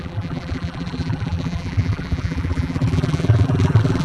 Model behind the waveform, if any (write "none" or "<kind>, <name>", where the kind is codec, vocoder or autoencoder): vocoder, BigVGAN v2